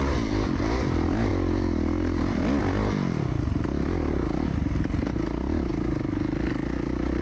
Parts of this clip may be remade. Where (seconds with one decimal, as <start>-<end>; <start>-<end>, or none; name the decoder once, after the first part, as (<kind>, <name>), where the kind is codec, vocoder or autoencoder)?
none